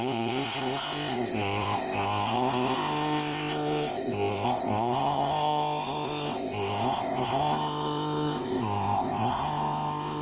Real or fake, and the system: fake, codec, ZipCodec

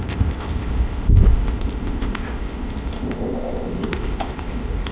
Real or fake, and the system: fake, codec, ZipCodec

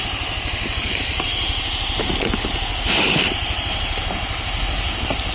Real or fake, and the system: real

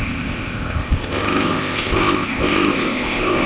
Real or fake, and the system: fake, codec, ZipCodec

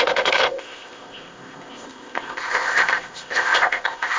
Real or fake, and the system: fake, codec, ZipCodec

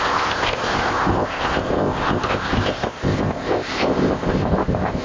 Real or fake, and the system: fake, codec, ZipCodec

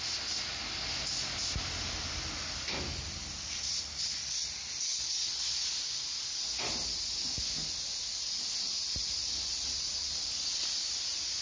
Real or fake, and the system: real